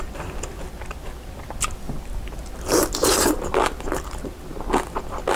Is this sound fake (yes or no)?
no